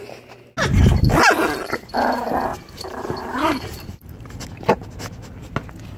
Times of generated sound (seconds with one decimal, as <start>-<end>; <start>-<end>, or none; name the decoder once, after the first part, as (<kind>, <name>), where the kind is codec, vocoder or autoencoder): 2.5-4.3 (vocoder, BigVGAN v2)